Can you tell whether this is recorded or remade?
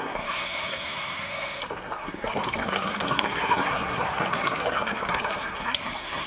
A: remade